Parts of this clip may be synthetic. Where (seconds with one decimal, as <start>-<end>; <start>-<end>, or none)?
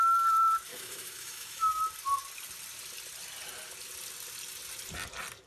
0.7-1.8